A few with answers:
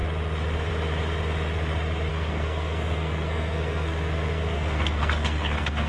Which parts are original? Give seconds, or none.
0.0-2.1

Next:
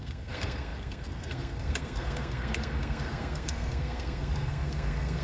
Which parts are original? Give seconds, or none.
none

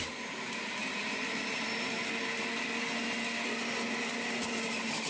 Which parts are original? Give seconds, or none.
0.0-5.1

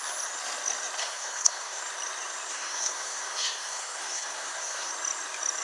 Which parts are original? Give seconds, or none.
0.0-1.0; 1.8-2.5; 4.9-5.6